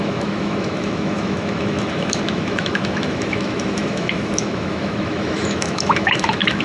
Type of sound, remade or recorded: remade